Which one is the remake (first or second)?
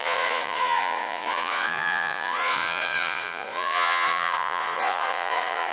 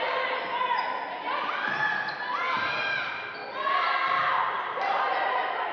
first